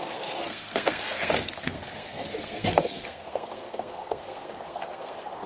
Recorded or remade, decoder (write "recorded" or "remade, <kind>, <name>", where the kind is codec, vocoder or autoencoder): remade, codec, SNAC